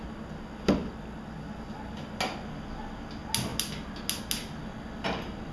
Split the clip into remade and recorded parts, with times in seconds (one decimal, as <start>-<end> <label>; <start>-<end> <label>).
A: 0.0-5.5 recorded